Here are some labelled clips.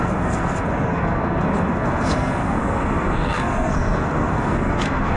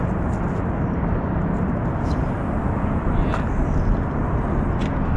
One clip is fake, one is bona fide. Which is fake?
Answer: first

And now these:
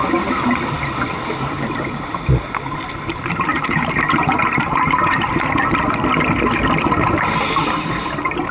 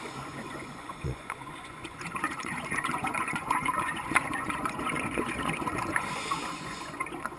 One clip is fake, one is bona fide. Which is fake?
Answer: second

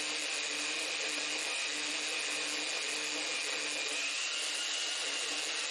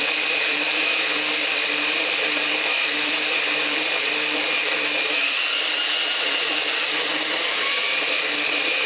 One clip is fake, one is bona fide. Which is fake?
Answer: second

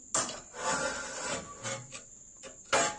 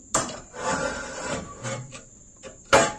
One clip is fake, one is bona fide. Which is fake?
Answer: second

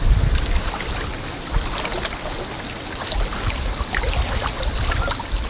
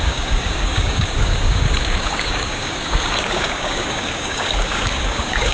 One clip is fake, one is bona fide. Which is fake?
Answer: second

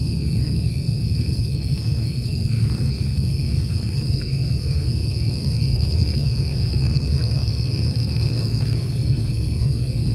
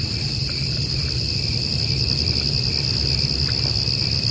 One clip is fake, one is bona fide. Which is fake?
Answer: first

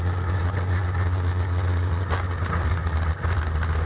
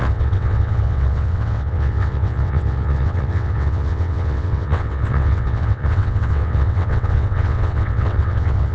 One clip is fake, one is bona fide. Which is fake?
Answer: second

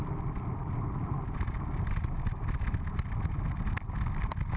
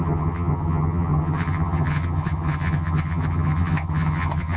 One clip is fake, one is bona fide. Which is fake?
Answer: second